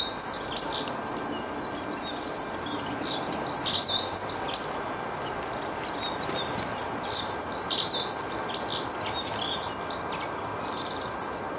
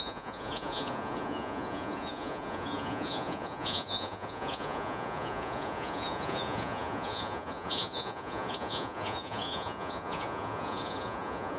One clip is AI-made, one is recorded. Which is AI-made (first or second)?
second